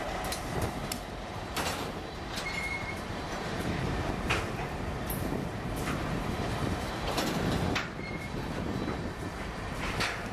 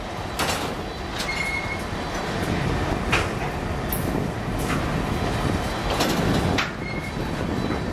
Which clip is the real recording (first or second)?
second